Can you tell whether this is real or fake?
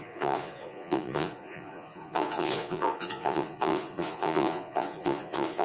fake